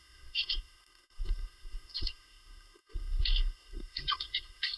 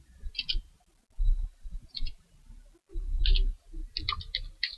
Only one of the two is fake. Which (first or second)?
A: first